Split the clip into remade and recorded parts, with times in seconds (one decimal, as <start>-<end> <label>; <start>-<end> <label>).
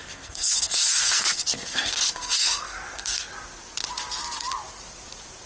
0.0-3.3 remade; 3.3-5.5 recorded